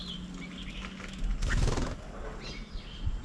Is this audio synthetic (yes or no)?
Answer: no